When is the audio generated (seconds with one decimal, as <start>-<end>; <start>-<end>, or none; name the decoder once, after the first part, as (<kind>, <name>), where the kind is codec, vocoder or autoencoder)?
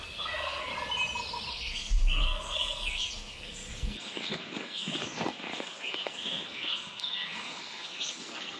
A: 0.0-0.7 (codec, SNAC); 1.5-8.6